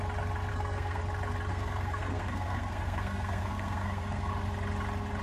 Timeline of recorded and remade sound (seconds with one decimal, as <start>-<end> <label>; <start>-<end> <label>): 0.0-0.5 recorded; 0.5-1.0 remade; 1.0-1.5 recorded; 1.5-4.3 remade; 4.3-5.2 recorded